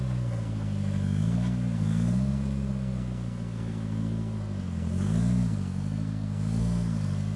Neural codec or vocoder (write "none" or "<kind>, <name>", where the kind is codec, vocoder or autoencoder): codec, SNAC